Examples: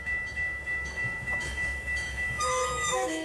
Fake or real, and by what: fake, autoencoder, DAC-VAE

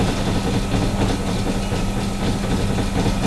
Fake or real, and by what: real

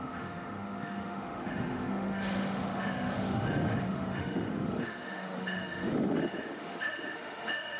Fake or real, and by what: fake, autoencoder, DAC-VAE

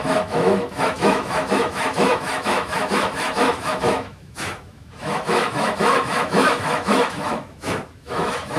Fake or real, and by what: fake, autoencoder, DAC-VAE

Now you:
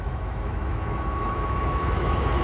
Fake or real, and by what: fake, autoencoder, DAC-VAE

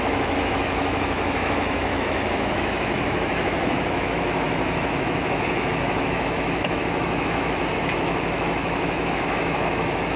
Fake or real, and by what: fake, autoencoder, DAC-VAE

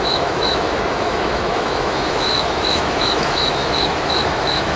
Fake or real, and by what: fake, autoencoder, DAC-VAE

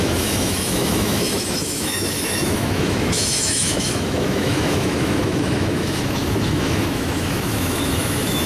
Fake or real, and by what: fake, autoencoder, DAC-VAE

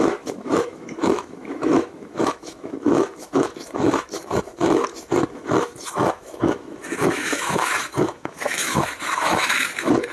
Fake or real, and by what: fake, autoencoder, DAC-VAE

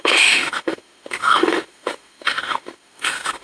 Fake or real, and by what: fake, autoencoder, DAC-VAE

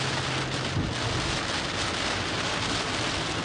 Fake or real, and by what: real